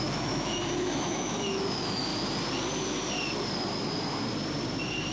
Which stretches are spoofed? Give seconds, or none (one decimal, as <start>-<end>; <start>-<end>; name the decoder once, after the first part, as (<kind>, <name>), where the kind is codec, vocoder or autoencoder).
0.0-2.1 (autoencoder, DAC-VAE)